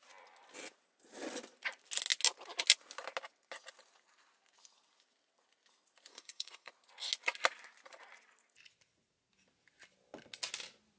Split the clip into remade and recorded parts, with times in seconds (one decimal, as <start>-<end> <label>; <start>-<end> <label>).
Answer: 0.0-6.1 recorded; 6.1-6.7 remade; 6.7-11.0 recorded